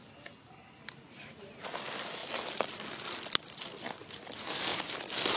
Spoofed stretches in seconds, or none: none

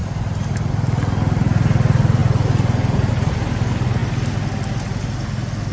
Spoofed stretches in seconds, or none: none

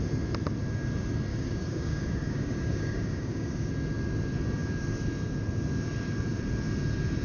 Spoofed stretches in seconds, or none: 1.3-3.7

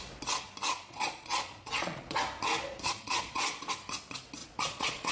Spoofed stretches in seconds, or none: 0.7-2.2; 2.6-3.7; 4.4-5.1

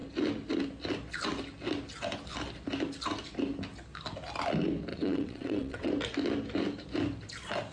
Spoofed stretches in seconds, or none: 4.9-5.9

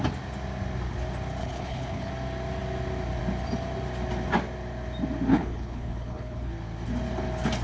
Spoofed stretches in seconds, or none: 1.4-2.1; 5.3-6.5

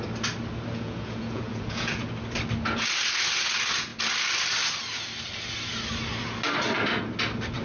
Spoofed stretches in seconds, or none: 0.7-2.1

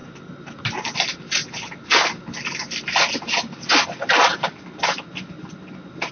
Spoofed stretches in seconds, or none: 3.1-4.3